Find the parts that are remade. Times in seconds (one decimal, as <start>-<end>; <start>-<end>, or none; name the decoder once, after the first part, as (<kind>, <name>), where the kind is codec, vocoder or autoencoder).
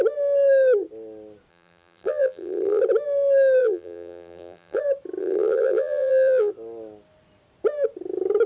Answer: 1.5-2.8 (vocoder, BigVGAN v2); 3.6-4.8; 5.2-6.5